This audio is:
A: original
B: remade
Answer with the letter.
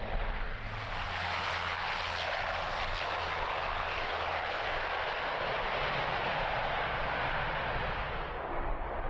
A